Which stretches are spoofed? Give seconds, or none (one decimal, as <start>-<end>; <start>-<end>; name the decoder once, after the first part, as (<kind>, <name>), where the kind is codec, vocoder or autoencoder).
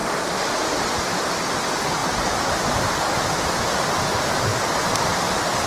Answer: none